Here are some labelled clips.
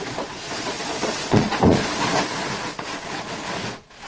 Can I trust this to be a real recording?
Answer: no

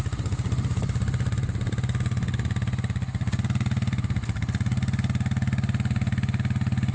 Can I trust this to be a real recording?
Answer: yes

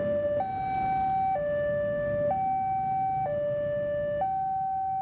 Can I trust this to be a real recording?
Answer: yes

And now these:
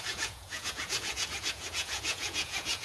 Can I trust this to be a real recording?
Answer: no